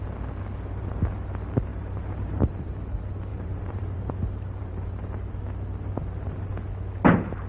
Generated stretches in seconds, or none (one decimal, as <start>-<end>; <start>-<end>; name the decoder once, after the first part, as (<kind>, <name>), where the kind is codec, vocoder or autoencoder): 1.7-2.7 (vocoder, BigVGAN v2); 3.3-4.1; 4.6-5.4